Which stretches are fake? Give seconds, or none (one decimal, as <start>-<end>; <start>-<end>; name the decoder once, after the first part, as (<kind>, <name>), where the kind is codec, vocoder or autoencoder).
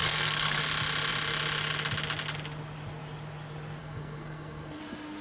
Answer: 0.0-0.6 (codec, SNAC); 3.8-4.8